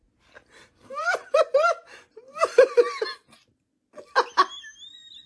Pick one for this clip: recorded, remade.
recorded